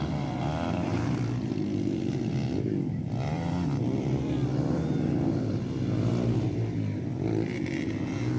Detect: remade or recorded remade